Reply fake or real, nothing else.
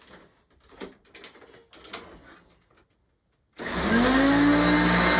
real